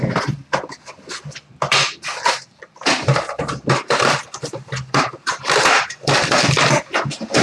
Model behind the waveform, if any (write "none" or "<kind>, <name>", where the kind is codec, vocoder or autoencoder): vocoder, BigVGAN v2